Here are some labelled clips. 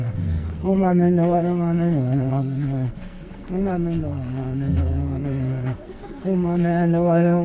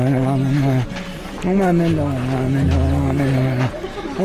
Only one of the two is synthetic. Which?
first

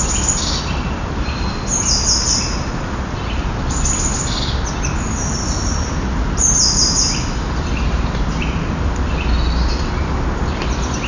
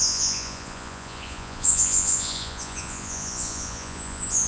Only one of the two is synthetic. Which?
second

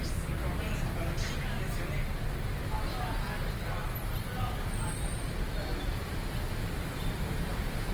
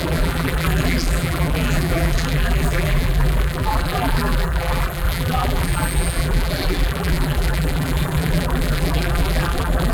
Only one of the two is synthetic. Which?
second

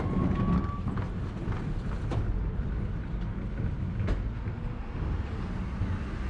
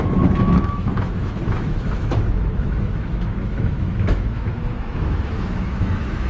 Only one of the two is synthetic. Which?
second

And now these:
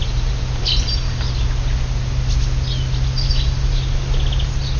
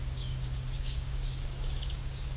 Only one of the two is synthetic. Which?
second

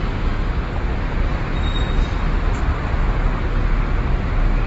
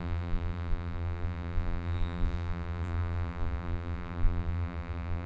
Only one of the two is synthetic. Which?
second